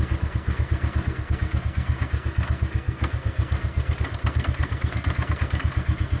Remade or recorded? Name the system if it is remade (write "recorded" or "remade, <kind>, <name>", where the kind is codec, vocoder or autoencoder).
remade, codec, SNAC